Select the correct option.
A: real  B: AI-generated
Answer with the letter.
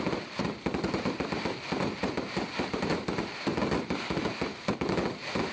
B